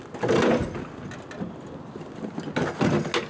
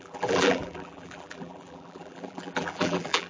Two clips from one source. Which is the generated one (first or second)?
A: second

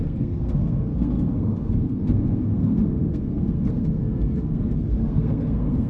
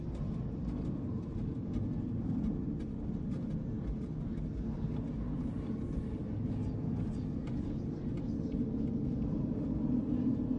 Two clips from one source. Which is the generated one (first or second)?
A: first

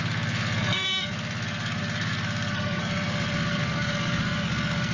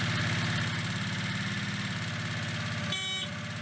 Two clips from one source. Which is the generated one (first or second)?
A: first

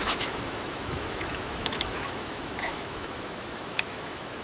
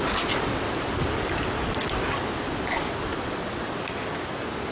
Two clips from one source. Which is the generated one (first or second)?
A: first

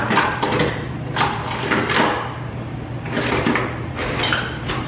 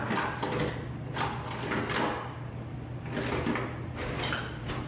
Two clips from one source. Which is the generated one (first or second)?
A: first